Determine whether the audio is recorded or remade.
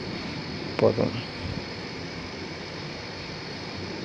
remade